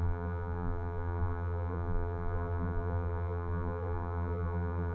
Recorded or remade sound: remade